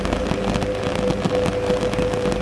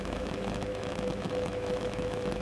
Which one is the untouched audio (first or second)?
first